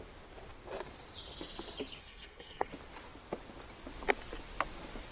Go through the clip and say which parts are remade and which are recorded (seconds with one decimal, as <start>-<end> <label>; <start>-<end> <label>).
0.0-2.0 recorded; 2.0-2.7 remade; 2.7-5.1 recorded